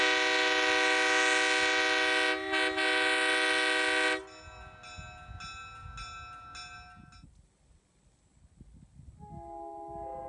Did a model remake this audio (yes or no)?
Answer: no